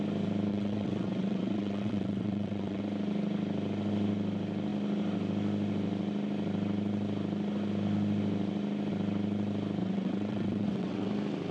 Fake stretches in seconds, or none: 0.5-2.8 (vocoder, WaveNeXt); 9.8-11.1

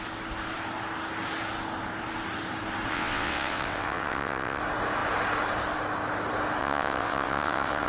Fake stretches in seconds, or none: 2.9-4.6 (vocoder, WaveNeXt); 6.6-7.9